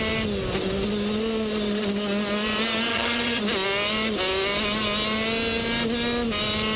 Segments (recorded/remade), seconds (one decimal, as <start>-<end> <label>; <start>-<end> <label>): 0.0-2.9 recorded; 2.9-3.4 remade; 3.4-6.8 recorded